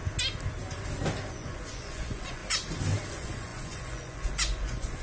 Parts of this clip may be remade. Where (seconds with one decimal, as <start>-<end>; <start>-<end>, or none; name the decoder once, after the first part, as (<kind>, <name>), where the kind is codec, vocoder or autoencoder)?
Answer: 1.3-2.4 (vocoder, Vocos); 3.1-5.0